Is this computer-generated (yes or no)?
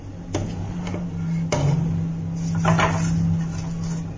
no